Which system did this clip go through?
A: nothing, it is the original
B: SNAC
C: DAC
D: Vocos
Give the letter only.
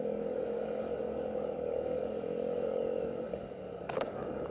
C